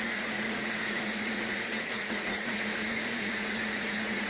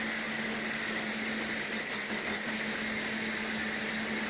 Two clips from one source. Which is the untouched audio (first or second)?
second